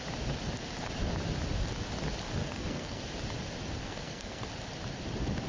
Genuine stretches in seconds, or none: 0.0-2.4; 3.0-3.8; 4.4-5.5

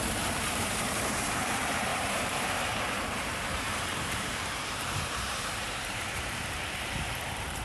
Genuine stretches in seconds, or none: none

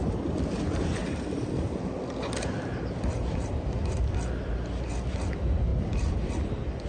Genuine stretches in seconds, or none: 0.0-6.9

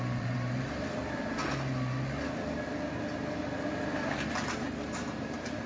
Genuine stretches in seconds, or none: 1.4-4.3

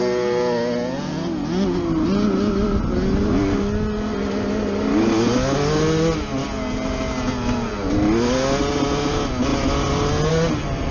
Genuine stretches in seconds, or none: 0.0-10.9